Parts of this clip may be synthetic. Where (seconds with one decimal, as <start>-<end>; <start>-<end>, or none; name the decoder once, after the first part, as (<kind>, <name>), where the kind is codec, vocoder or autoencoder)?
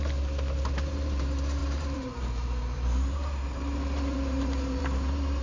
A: 0.0-5.4 (vocoder, BigVGAN v2)